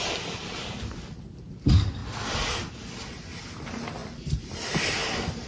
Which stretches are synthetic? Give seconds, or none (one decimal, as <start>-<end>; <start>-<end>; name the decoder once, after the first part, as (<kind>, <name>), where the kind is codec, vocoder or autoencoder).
none